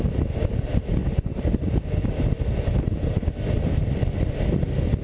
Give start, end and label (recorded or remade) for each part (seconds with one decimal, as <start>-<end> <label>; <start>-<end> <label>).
0.0-5.0 recorded